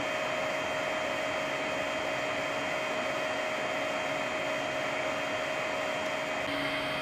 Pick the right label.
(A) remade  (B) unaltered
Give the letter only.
B